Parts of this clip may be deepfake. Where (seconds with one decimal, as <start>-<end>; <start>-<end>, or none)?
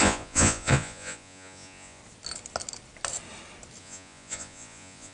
0.0-2.0; 3.8-5.1